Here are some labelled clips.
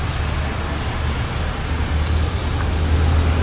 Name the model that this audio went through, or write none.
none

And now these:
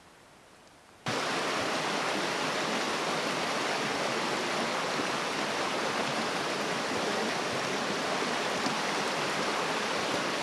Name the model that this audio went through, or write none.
none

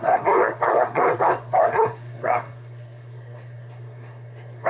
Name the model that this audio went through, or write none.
codec, SNAC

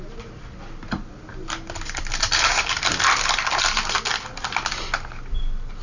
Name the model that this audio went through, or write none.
none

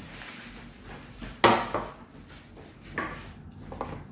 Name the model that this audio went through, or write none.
none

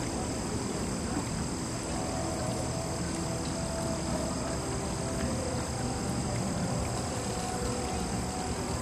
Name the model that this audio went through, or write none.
none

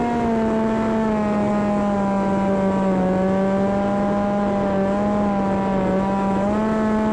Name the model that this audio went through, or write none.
none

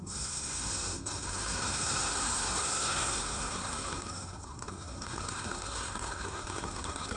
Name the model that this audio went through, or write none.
codec, SNAC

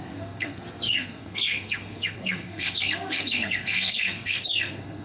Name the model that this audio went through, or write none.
codec, SNAC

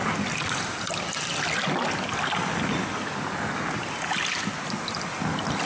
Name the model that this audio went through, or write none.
none